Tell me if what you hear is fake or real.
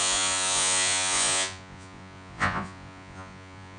fake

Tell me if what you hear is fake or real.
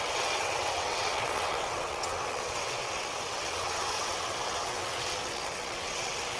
fake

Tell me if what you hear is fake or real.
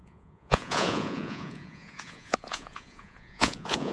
fake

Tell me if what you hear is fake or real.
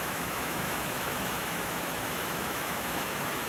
fake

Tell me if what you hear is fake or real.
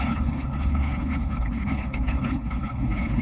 fake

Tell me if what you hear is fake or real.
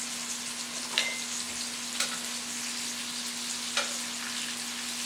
real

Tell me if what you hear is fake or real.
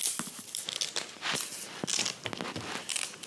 real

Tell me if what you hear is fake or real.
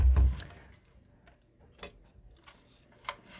real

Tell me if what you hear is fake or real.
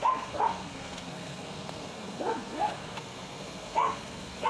fake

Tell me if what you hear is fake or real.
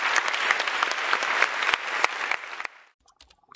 real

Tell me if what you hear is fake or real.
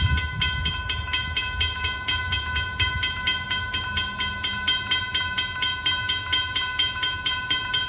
real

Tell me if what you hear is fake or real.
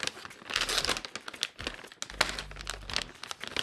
real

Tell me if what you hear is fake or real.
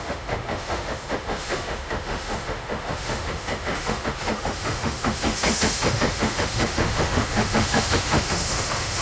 fake